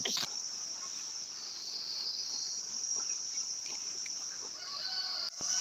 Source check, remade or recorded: recorded